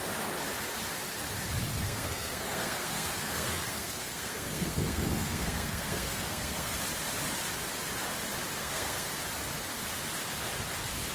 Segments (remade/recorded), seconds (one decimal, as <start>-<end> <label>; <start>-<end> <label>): 0.0-1.7 recorded; 1.7-6.8 remade; 6.8-8.6 recorded; 8.6-9.1 remade; 9.1-11.1 recorded